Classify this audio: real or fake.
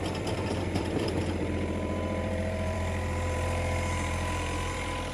fake